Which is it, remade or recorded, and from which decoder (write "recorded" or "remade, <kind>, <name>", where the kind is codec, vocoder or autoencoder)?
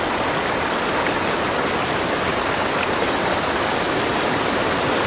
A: recorded